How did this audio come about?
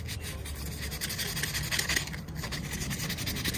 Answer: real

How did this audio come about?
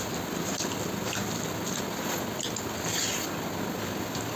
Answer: real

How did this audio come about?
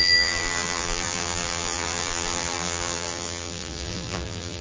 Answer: fake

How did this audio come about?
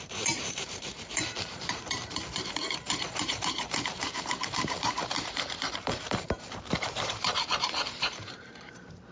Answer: fake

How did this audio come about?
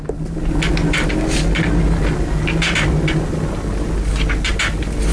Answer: real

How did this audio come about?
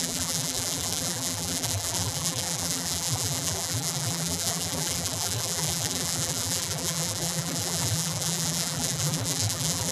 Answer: fake